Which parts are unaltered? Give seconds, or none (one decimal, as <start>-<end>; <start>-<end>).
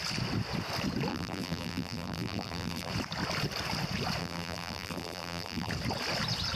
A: 0.0-1.1; 2.9-4.2; 5.7-6.6